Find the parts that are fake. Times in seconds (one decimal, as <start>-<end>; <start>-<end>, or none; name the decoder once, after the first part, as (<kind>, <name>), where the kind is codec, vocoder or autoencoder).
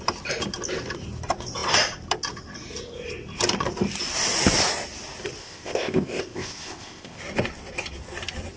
5.4-7.2 (codec, ZipCodec)